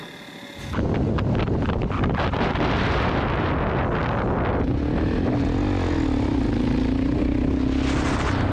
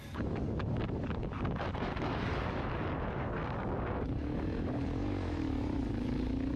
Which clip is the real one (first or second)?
first